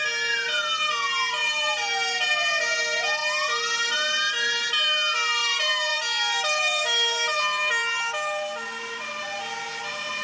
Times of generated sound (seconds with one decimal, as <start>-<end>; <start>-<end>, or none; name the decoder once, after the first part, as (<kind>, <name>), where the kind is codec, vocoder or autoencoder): 1.4-2.5 (vocoder, BigVGAN v2); 5.4-9.4